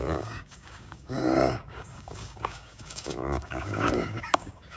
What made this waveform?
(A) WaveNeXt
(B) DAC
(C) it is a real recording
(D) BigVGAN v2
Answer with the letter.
B